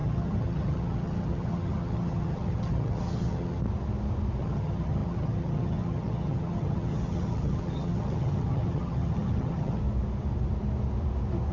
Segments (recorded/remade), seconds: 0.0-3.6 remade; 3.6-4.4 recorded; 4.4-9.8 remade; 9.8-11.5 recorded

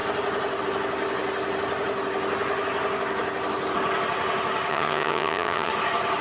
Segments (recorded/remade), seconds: 0.0-4.7 recorded; 4.7-5.7 remade; 5.7-6.2 recorded

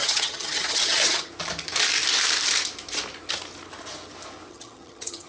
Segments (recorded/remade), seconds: 0.0-1.3 remade; 1.3-4.5 recorded; 4.5-5.3 remade

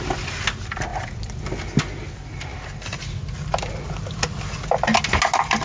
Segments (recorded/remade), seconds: 0.0-5.6 recorded

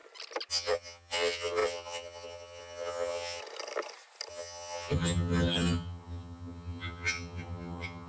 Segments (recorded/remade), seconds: 0.0-0.5 recorded; 0.5-3.4 remade; 3.4-4.3 recorded; 4.3-8.1 remade

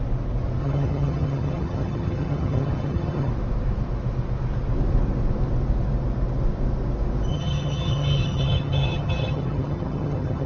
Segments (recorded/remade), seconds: 0.0-0.6 recorded; 0.6-3.3 remade; 3.3-7.3 recorded; 7.3-10.5 remade

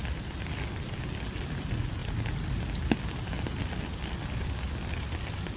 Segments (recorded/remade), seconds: 0.0-5.6 recorded